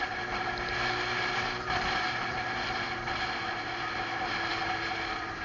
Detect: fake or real real